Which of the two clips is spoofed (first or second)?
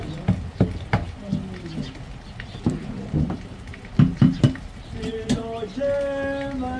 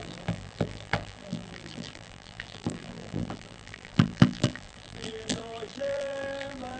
second